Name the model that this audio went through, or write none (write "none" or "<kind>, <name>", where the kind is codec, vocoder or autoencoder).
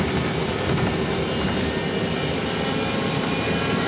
none